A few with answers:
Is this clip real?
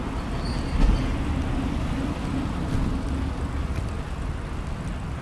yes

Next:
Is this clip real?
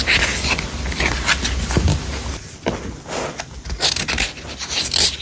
yes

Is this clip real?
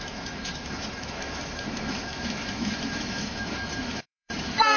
no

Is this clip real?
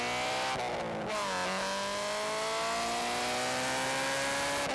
yes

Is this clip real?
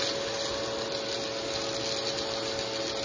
yes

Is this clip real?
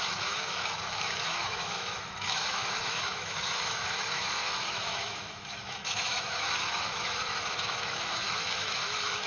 no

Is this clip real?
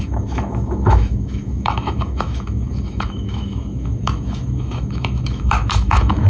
no